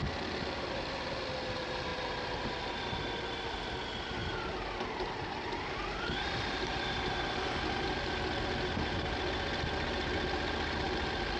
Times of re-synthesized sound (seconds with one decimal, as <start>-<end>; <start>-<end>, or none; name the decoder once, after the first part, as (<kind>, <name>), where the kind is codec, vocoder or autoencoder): none